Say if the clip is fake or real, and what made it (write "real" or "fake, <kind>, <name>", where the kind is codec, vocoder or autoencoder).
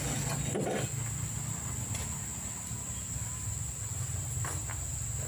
real